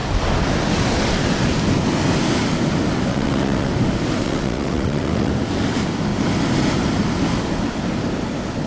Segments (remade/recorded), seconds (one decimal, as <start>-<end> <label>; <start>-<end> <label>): 0.0-3.1 recorded; 3.1-3.7 remade; 3.7-4.2 recorded; 4.2-5.3 remade; 5.3-8.7 recorded